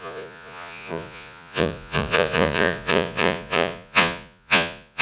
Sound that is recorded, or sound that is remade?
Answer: remade